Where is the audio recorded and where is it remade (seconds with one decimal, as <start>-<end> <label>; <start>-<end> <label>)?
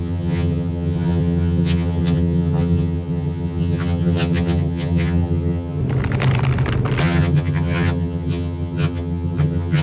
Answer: 0.0-5.8 remade; 5.8-7.0 recorded; 7.0-9.8 remade